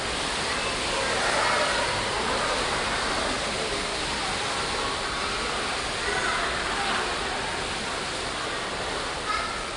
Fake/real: real